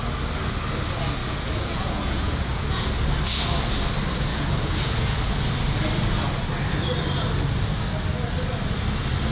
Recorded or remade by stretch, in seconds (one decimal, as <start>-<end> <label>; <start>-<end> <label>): 0.0-1.2 recorded; 1.2-2.9 remade; 2.9-4.3 recorded; 4.3-5.4 remade; 5.4-9.3 recorded